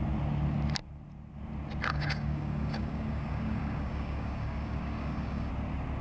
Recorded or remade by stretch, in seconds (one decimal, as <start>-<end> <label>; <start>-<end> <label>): 0.0-1.9 recorded; 1.9-5.5 remade; 5.5-6.0 recorded